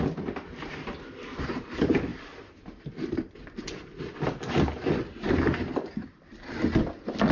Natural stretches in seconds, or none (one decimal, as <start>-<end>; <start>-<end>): 0.0-7.3